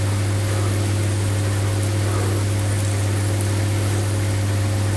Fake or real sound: real